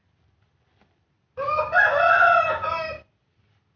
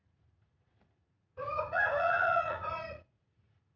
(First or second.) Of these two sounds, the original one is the first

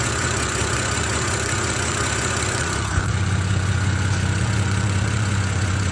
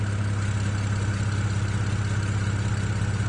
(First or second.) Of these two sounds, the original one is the second